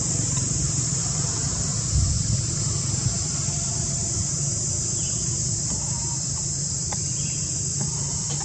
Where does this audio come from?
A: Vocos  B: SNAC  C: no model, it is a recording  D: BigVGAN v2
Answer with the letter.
D